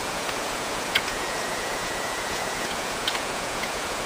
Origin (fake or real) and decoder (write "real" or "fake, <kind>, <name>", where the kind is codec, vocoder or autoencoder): fake, vocoder, Vocos